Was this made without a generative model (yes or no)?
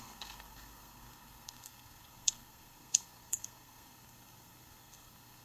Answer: no